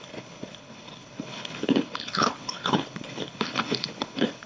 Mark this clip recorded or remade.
remade